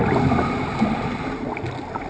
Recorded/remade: recorded